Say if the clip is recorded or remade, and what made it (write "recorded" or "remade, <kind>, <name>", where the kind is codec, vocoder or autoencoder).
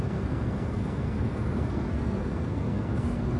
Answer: remade, codec, SNAC